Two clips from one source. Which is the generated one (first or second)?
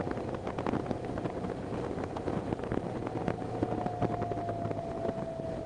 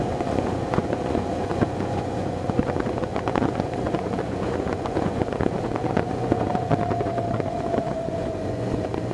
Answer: second